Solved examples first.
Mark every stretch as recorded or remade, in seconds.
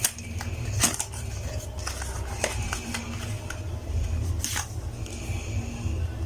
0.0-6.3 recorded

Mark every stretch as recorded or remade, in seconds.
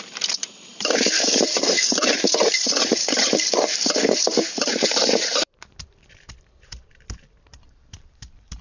0.0-8.6 remade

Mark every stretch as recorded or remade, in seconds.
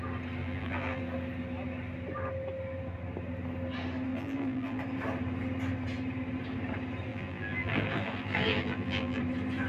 0.0-0.4 recorded; 0.4-1.0 remade; 1.0-4.1 recorded; 4.1-4.8 remade; 4.8-7.1 recorded; 7.1-9.2 remade; 9.2-9.7 recorded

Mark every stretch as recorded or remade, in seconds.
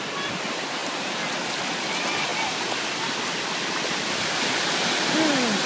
0.0-5.7 recorded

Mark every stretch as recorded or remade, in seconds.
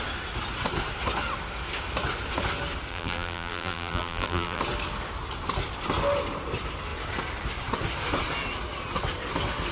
0.0-2.9 recorded; 2.9-4.6 remade; 4.6-9.7 recorded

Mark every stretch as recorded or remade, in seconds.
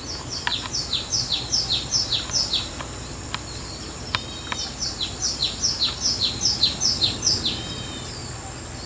0.0-0.5 remade; 0.5-1.1 recorded; 1.1-8.2 remade; 8.2-8.9 recorded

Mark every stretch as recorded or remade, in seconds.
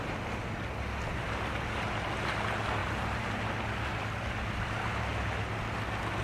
0.0-2.8 recorded; 2.8-3.6 remade; 3.6-6.2 recorded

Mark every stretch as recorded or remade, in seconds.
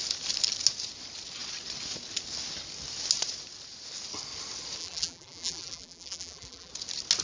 0.0-4.8 recorded; 4.8-6.7 remade; 6.7-7.2 recorded